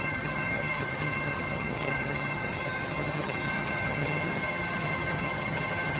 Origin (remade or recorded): remade